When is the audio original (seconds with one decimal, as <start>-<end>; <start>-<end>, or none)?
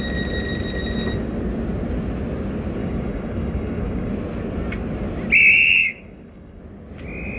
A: 0.0-2.8; 4.1-5.8; 6.6-7.4